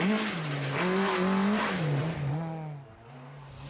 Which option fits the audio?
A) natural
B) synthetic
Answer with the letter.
A